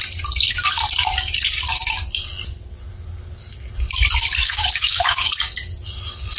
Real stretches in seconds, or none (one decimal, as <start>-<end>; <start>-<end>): 0.0-4.4; 5.3-6.4